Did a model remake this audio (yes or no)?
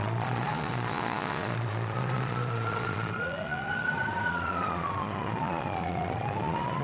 yes